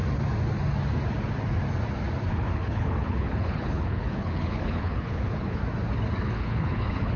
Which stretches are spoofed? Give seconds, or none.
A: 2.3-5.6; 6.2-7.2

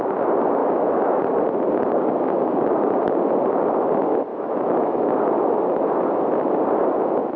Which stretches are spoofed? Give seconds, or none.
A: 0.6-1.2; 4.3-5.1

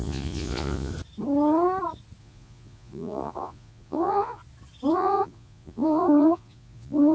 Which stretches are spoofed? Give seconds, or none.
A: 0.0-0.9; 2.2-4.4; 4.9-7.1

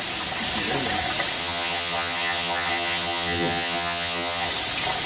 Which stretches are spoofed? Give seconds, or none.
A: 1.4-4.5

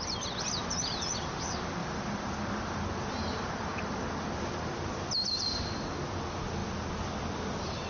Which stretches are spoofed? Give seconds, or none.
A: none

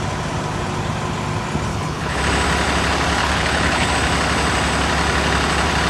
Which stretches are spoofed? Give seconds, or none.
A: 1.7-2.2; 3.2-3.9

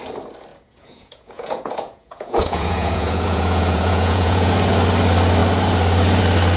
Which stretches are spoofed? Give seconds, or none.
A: 0.5-4.5

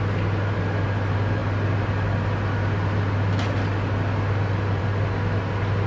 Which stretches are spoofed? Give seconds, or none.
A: none